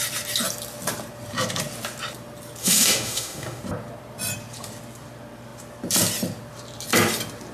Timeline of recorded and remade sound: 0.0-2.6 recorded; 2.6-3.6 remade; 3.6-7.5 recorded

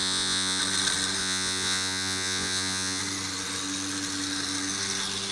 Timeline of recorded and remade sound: 0.0-0.6 remade; 0.6-1.2 recorded; 1.2-3.0 remade; 3.0-5.3 recorded

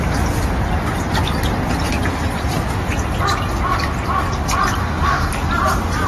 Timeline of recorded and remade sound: 0.0-4.8 recorded; 4.8-5.3 remade; 5.3-6.1 recorded

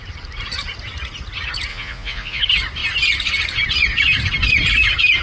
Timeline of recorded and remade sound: 0.0-1.7 recorded; 1.7-2.4 remade; 2.4-5.2 recorded

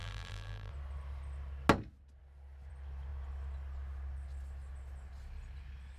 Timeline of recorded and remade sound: 0.0-0.7 remade; 0.7-6.0 recorded

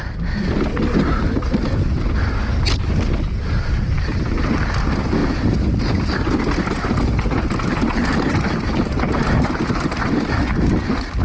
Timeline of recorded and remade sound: 0.0-11.2 recorded

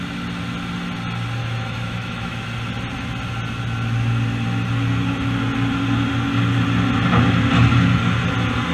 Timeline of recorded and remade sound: 0.0-1.4 recorded; 1.4-2.4 remade; 2.4-8.7 recorded